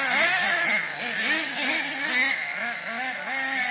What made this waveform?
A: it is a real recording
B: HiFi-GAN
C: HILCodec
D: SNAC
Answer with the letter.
A